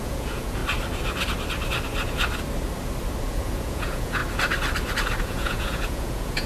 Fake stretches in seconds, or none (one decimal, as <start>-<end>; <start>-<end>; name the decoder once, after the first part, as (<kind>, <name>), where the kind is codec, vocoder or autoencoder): 0.0-0.6 (vocoder, Vocos); 3.3-4.2; 5.2-6.5